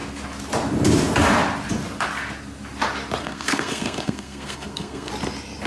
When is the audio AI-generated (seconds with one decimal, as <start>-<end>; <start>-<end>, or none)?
3.2-5.1